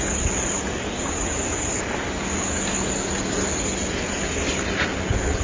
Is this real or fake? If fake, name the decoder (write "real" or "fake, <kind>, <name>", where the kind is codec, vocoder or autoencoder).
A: real